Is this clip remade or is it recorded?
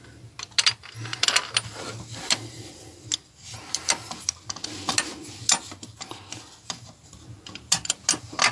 recorded